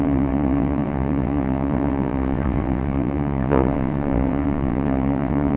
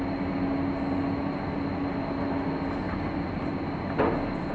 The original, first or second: second